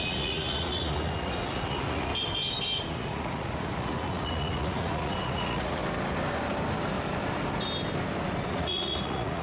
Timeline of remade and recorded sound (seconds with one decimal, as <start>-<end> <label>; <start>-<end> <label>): 0.0-2.1 remade; 2.1-2.9 recorded; 2.9-5.8 remade; 5.8-8.5 recorded; 8.5-9.4 remade